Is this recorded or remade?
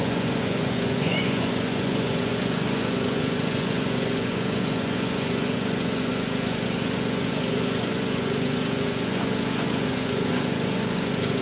remade